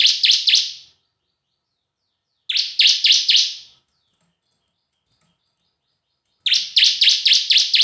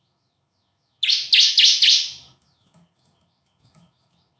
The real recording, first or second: first